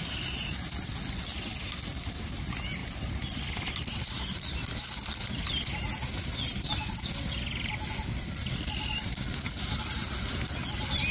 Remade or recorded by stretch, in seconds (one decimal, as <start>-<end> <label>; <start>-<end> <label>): 0.0-11.1 recorded